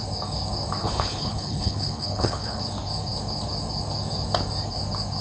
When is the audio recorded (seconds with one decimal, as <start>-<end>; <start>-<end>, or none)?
0.0-0.8; 2.6-5.2